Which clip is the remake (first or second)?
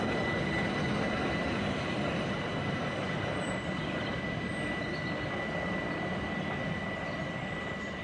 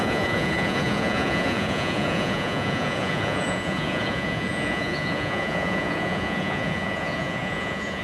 second